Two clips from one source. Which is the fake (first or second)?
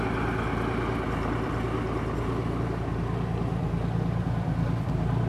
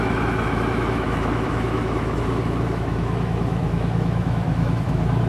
second